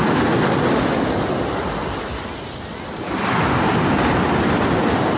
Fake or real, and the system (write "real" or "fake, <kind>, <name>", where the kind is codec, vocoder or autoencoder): real